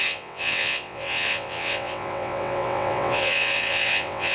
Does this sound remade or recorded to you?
remade